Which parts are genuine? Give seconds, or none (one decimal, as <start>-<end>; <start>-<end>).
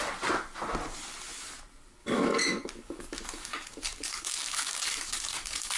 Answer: 0.0-2.0